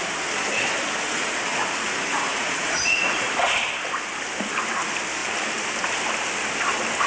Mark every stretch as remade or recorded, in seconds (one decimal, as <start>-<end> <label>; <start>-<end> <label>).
0.0-1.5 recorded; 1.5-3.3 remade; 3.3-7.1 recorded